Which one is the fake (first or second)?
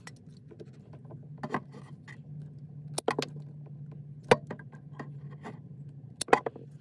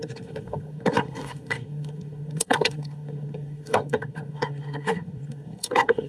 second